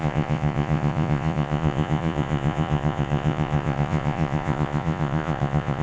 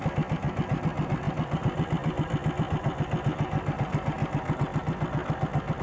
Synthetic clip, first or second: first